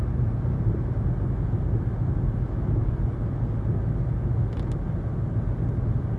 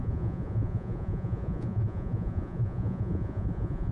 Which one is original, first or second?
first